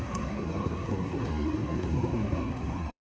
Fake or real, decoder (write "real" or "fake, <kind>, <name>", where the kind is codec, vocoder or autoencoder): fake, codec, SNAC